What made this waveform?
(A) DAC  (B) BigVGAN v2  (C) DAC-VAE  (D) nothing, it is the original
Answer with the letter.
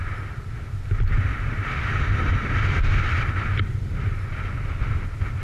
D